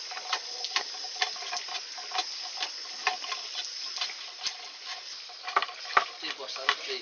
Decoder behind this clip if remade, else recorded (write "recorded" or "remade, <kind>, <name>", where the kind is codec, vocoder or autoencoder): recorded